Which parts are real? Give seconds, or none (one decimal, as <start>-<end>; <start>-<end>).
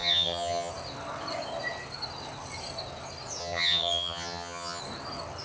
0.7-3.4; 4.8-5.4